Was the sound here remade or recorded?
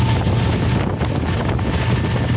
recorded